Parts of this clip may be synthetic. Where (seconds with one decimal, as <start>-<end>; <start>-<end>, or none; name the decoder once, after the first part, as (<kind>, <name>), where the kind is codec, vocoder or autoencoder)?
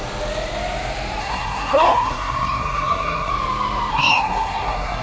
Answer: 1.2-3.3 (codec, SNAC); 3.9-5.0